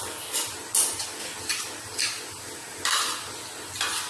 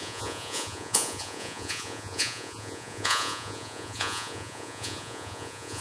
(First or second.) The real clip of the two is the first